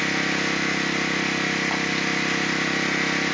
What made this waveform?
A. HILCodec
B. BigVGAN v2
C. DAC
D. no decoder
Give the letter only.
D